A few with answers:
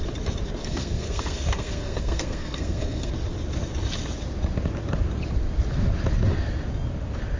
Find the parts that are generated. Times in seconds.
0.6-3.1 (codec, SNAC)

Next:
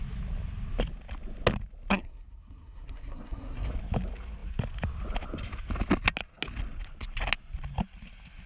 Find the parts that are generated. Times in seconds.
1.9-3.7 (codec, SNAC)

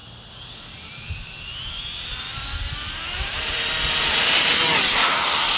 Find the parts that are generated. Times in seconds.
none

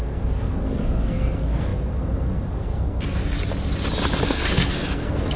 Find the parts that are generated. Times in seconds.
0.0-3.2 (codec, SNAC); 4.2-5.4